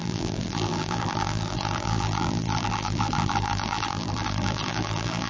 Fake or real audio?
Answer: fake